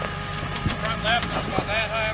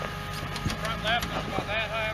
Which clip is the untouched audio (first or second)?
second